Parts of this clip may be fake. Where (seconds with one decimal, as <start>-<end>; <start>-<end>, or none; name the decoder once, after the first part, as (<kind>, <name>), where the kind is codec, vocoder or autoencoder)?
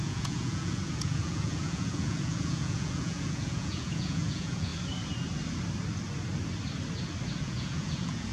0.0-4.7 (vocoder, Vocos); 7.4-8.3